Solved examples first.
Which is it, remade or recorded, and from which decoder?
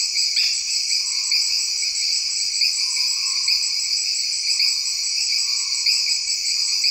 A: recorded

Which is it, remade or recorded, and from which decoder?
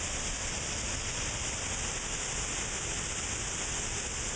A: recorded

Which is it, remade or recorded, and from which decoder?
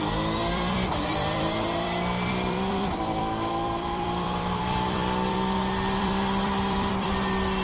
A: remade, vocoder, BigVGAN v2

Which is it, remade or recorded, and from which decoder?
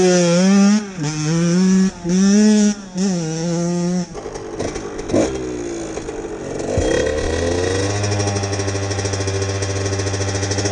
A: recorded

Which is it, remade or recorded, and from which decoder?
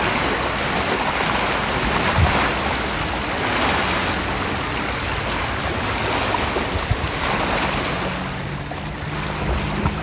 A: recorded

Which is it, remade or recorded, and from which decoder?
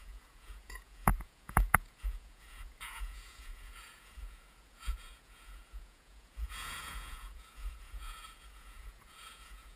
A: remade, vocoder, Vocos